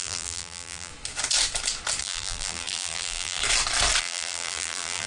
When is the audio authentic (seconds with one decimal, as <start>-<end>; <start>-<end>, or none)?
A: 0.9-2.0; 3.4-4.0